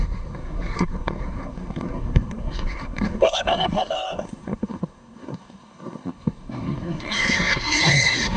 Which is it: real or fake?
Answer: fake